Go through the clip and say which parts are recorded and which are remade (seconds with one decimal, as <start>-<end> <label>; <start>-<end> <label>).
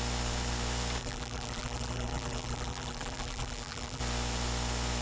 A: 0.0-1.0 recorded; 1.0-4.0 remade; 4.0-5.0 recorded